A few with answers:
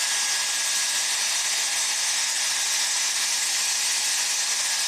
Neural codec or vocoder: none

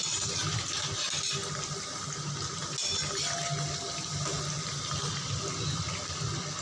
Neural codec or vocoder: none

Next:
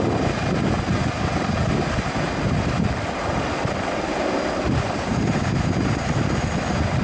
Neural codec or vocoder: none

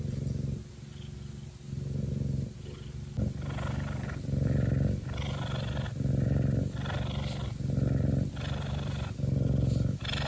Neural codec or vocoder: none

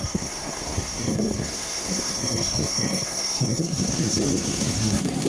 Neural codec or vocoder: codec, SNAC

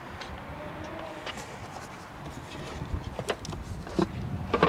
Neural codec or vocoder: none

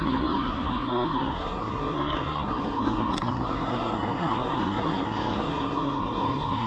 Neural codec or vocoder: codec, SNAC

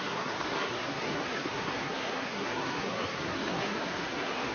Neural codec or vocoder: codec, SNAC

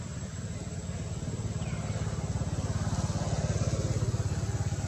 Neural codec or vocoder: none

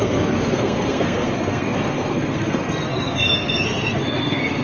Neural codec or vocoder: codec, SNAC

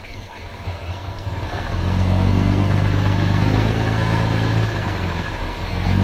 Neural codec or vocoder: codec, SNAC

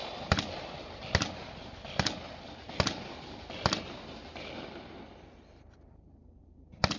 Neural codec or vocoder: none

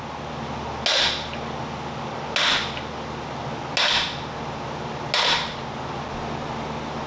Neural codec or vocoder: none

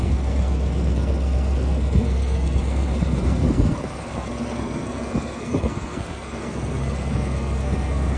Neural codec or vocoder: codec, SNAC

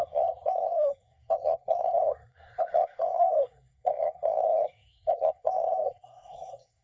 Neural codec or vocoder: codec, SNAC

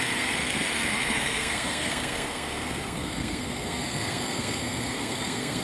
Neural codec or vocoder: codec, SNAC